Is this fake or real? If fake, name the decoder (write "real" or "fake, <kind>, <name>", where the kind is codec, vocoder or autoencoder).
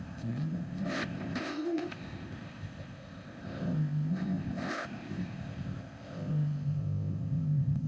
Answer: fake, codec, ZipCodec